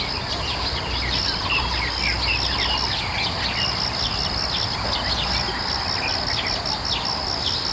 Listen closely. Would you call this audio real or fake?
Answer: real